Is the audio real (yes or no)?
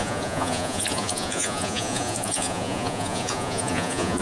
no